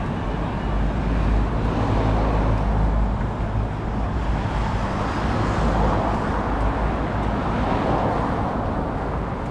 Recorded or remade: recorded